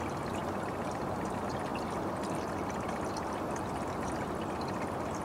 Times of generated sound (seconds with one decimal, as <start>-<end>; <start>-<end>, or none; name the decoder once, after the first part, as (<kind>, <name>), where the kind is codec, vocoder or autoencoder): none